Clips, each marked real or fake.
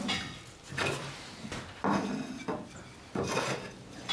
real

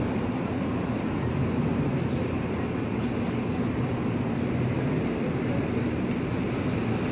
fake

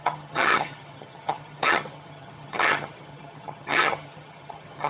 fake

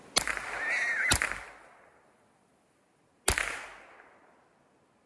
real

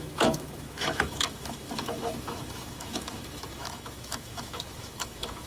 fake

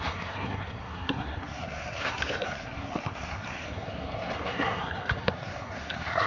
fake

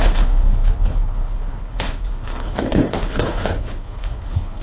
fake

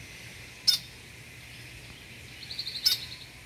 real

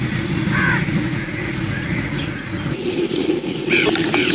fake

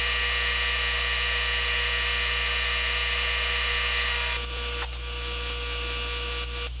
real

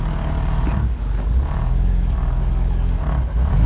fake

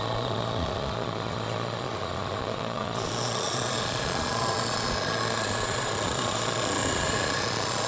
fake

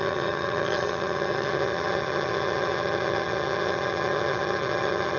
fake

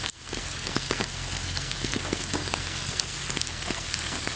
fake